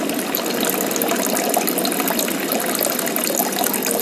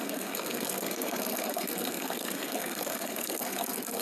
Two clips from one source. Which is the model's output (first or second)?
second